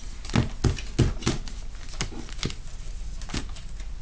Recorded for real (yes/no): yes